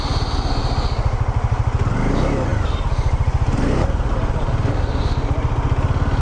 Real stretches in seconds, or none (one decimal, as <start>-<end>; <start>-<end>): 0.0-2.5; 5.0-6.2